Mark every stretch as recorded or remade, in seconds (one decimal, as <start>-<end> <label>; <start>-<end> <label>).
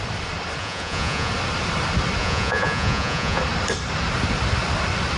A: 0.0-0.6 recorded; 0.6-1.3 remade; 1.3-2.2 recorded; 2.2-3.4 remade; 3.4-5.2 recorded